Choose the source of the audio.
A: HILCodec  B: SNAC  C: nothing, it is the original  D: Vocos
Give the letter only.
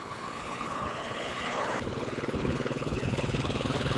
A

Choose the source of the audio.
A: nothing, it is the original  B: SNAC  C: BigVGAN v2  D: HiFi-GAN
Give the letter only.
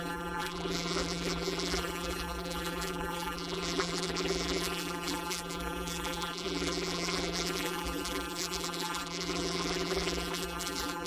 C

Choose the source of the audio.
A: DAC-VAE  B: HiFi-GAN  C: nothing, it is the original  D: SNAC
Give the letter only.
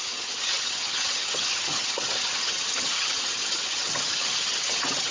B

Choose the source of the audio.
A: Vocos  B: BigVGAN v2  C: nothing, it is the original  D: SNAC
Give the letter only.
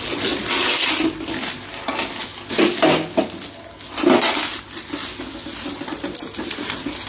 C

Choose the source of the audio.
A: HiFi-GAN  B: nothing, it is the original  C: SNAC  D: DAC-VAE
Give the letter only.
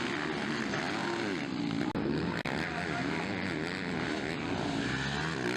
B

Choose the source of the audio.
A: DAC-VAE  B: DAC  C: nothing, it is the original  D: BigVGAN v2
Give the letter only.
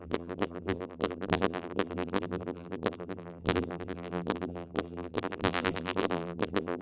D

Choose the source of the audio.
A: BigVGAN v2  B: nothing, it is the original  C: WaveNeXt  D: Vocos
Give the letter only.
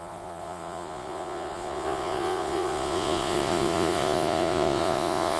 D